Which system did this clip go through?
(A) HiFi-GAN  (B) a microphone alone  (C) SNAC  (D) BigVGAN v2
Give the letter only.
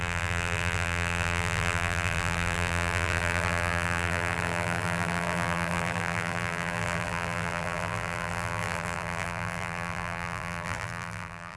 D